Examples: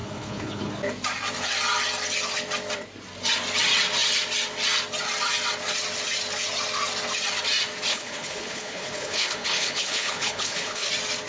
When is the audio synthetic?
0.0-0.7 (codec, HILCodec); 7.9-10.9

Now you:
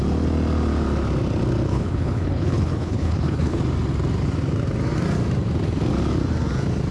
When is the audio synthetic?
1.7-3.6 (codec, HILCodec)

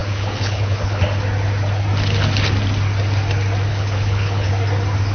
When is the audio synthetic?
0.0-1.0 (codec, HILCodec); 3.7-4.5

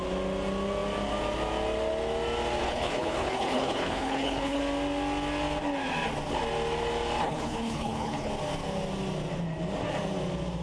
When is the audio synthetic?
2.6-4.6 (codec, HILCodec); 7.2-8.3